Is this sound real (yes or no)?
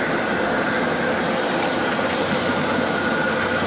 yes